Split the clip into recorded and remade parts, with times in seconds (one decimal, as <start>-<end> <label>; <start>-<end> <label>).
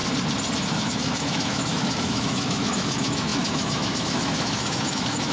0.0-0.6 recorded; 0.6-5.3 remade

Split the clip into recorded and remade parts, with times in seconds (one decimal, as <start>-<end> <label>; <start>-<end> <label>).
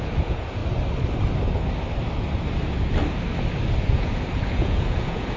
0.0-0.6 remade; 0.6-3.8 recorded; 3.8-5.4 remade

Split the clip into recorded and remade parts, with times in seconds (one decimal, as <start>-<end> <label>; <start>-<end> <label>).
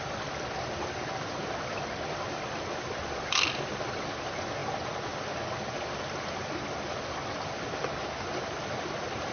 0.0-9.3 recorded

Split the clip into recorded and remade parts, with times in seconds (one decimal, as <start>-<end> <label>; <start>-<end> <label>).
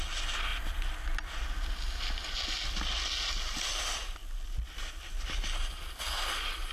0.0-6.7 recorded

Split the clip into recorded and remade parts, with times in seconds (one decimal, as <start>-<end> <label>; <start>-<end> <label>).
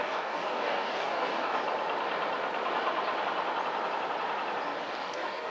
0.0-1.6 remade; 1.6-4.9 recorded; 4.9-5.5 remade